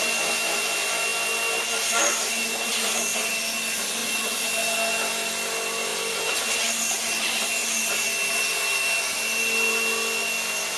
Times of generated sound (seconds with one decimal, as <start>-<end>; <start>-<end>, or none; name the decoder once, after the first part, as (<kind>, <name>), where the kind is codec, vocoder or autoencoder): none